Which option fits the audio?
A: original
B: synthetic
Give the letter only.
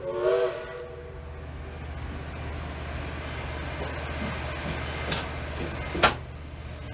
A